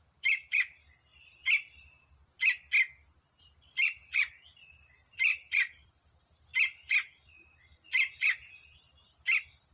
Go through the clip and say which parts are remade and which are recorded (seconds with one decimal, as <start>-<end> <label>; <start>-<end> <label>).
0.0-1.1 remade; 1.1-3.4 recorded; 3.4-9.7 remade